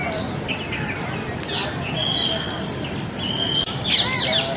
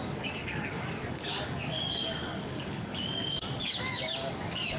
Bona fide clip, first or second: first